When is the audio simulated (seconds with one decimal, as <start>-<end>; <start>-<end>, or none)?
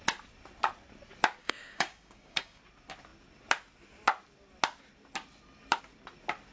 1.4-2.6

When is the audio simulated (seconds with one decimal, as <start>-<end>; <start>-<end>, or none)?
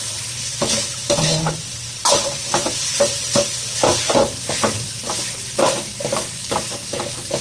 5.9-7.4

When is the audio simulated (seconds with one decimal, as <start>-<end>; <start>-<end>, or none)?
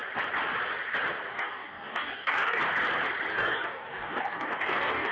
1.3-2.6; 3.3-5.1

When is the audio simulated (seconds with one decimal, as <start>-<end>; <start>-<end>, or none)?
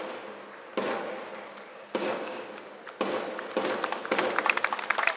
1.7-2.5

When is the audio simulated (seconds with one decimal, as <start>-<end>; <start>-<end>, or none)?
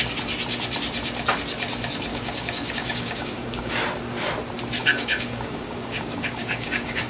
2.1-3.7; 4.8-7.1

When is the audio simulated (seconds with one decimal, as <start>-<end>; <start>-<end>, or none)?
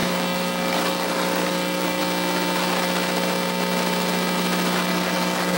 0.0-2.0; 4.9-5.6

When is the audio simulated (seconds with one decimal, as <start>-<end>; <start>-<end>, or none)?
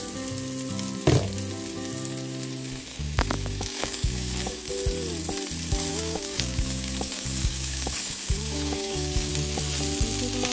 2.9-4.7; 5.9-9.3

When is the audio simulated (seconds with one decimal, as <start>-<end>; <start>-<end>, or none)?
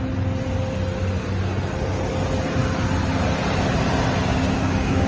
4.3-5.1